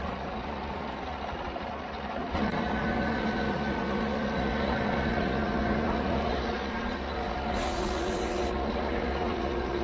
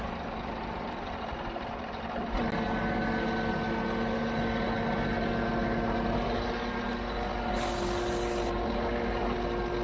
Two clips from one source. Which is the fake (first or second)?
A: first